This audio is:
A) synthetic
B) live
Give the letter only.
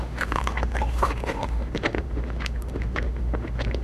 A